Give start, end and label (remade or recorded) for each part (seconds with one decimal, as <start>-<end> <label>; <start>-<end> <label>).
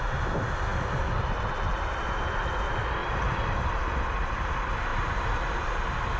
0.0-3.0 recorded; 3.0-3.8 remade; 3.8-4.9 recorded; 4.9-5.4 remade; 5.4-6.2 recorded